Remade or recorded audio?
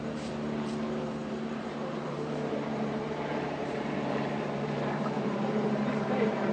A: remade